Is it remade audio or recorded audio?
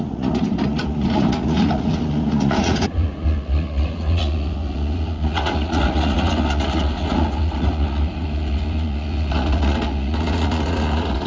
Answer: remade